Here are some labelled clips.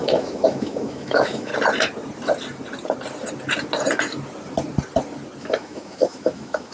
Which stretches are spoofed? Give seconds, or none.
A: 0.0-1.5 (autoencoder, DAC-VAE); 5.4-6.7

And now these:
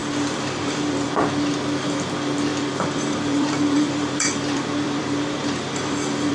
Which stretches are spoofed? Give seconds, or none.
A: 0.0-1.1 (vocoder, BigVGAN v2); 2.5-6.3

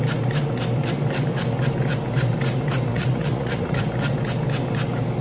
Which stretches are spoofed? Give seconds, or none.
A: 2.9-3.8 (vocoder, Vocos)

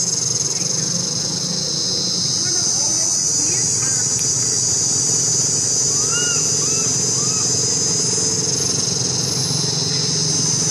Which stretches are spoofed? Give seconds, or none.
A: none

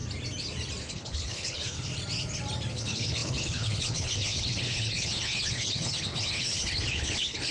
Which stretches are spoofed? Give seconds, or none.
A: 0.8-1.9 (codec, HILCodec); 2.7-7.5

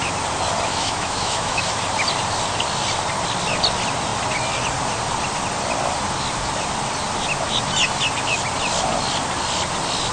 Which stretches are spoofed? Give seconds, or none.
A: 0.7-1.7 (autoencoder, DAC-VAE)